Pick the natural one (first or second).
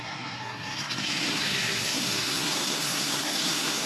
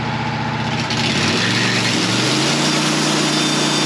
second